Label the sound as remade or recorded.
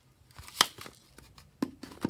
recorded